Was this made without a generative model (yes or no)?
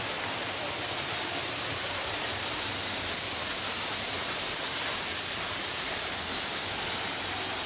yes